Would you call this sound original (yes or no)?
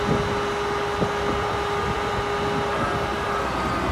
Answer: yes